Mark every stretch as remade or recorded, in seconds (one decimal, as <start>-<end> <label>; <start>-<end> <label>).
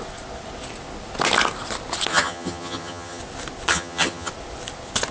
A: 0.0-2.1 recorded; 2.1-3.2 remade; 3.2-3.7 recorded; 3.7-4.3 remade; 4.3-5.1 recorded